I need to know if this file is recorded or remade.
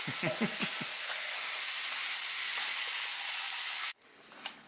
recorded